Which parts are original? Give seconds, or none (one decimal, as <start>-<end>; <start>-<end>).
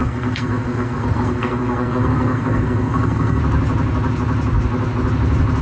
3.4-5.6